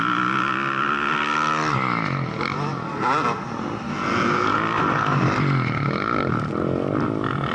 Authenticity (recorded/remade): recorded